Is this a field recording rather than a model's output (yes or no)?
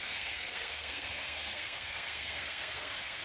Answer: no